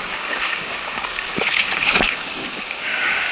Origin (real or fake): fake